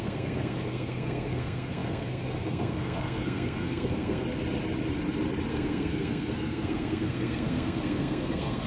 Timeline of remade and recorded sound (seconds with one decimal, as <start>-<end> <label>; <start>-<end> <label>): 0.0-4.2 remade; 4.2-5.5 recorded; 5.5-8.7 remade